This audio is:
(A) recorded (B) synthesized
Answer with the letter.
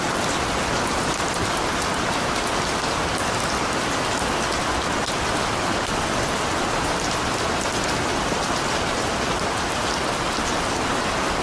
A